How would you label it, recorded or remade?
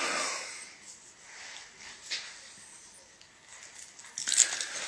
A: recorded